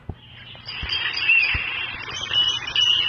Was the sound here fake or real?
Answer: real